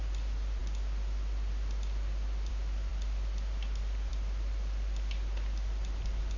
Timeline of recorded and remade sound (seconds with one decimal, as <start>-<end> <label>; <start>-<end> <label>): 0.0-6.4 recorded